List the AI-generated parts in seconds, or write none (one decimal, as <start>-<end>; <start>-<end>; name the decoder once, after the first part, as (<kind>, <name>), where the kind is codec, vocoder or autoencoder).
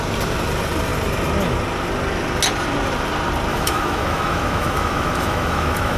3.5-6.0 (autoencoder, DAC-VAE)